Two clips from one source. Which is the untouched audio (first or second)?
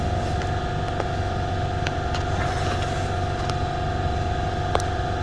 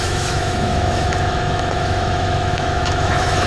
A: first